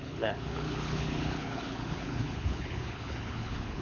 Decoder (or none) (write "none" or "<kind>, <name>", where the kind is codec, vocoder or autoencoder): codec, HILCodec